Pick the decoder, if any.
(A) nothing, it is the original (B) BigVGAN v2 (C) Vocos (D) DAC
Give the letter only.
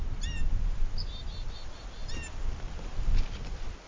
A